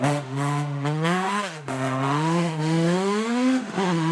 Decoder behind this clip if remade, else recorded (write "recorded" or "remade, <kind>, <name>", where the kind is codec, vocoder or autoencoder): remade, autoencoder, DAC-VAE